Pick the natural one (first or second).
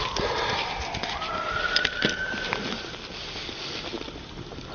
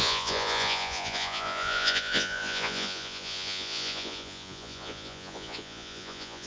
first